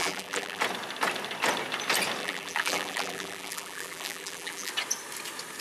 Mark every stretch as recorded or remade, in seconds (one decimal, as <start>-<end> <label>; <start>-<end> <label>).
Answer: 0.0-0.6 remade; 0.6-2.2 recorded; 2.2-4.7 remade; 4.7-5.6 recorded